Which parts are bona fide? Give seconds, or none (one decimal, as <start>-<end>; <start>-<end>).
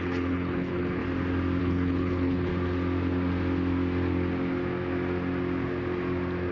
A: 1.0-1.6; 2.5-6.5